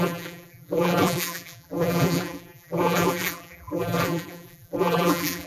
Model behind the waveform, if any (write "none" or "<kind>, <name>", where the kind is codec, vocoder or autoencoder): vocoder, BigVGAN v2